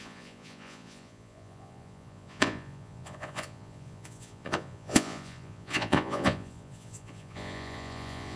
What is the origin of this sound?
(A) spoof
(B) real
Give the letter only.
A